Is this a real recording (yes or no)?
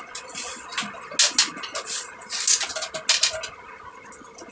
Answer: yes